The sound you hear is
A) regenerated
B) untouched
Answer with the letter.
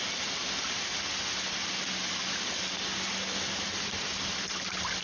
B